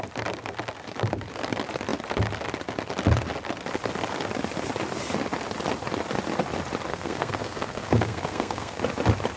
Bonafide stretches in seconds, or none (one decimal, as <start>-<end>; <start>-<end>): 0.0-6.9; 8.8-9.4